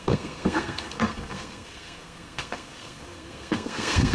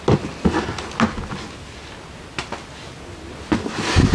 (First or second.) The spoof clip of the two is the first